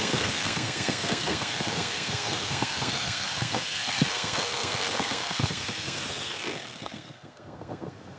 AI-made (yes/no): yes